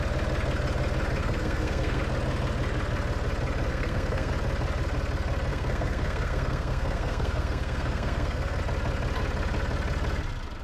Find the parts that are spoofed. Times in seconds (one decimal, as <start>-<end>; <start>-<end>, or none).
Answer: 1.2-2.0; 3.7-4.3; 5.5-8.6